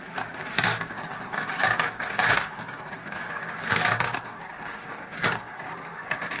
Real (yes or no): no